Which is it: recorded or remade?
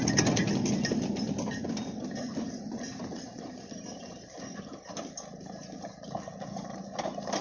recorded